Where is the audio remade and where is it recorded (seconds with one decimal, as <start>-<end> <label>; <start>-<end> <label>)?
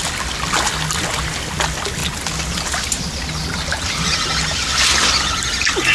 0.0-5.9 recorded